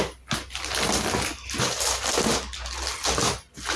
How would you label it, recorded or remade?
recorded